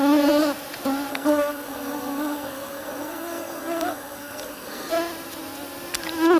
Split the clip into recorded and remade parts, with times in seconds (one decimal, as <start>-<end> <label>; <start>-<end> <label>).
0.0-1.1 recorded; 1.1-4.9 remade; 4.9-6.4 recorded